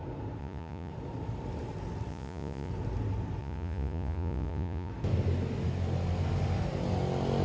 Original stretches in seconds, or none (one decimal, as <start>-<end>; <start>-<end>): 0.0-0.4; 0.9-2.1; 2.7-3.4; 4.9-7.4